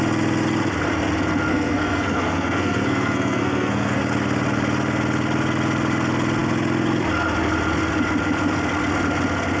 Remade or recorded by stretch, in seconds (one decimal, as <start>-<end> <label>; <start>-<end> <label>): 0.0-1.5 recorded; 1.5-4.0 remade; 4.0-9.6 recorded